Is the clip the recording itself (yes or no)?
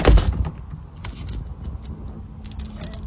yes